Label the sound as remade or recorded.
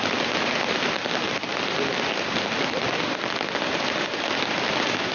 recorded